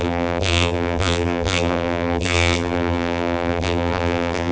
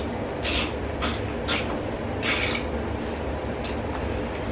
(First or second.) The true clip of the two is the second